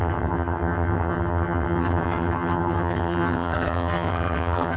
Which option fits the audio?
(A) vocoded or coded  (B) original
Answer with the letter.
A